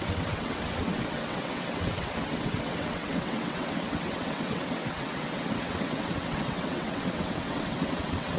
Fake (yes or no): yes